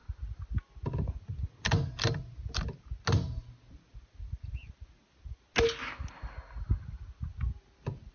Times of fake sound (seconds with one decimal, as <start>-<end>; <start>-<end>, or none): none